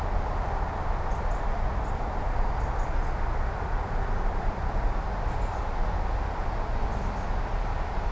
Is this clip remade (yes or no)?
no